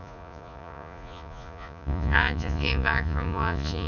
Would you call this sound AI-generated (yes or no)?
yes